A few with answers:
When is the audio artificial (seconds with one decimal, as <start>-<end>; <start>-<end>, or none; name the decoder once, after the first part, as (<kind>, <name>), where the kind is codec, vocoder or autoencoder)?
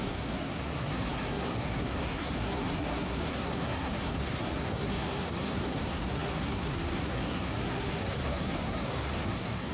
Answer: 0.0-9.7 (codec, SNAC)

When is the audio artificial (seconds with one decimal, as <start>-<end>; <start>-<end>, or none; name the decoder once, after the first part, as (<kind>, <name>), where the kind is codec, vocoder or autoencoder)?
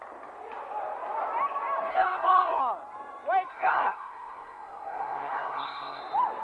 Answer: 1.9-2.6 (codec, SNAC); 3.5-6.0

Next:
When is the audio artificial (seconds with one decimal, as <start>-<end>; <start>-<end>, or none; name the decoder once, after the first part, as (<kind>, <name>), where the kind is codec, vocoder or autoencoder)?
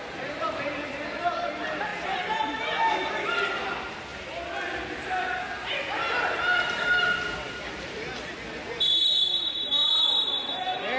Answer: none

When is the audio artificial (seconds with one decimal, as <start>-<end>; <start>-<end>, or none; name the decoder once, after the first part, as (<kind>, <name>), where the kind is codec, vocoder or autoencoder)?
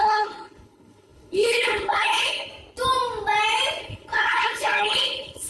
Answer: 0.0-2.5 (codec, HILCodec); 3.8-5.5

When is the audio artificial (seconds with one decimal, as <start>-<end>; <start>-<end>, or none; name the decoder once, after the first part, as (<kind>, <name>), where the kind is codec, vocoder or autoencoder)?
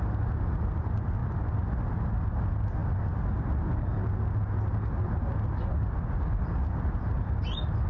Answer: none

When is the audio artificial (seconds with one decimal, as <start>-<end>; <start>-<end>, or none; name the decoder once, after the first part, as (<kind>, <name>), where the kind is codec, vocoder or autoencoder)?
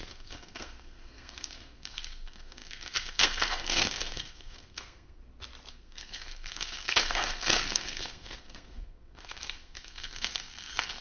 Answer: 0.0-5.2 (codec, SNAC); 5.7-11.0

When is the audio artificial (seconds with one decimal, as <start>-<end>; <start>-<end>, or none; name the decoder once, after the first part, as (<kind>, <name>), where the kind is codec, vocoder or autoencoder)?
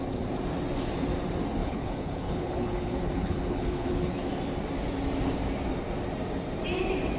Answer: 1.6-4.3 (codec, HILCodec)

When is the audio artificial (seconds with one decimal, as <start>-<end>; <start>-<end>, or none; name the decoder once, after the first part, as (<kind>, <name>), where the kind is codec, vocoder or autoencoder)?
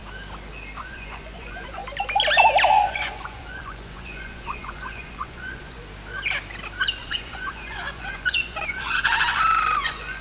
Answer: 0.8-1.8 (vocoder, Vocos); 2.7-5.8; 7.0-10.2